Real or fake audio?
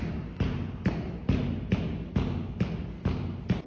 real